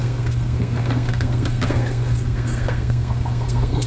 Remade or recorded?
remade